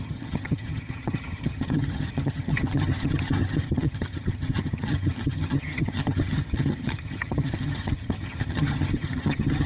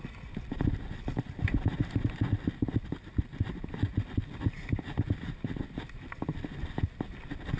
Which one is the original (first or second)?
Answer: second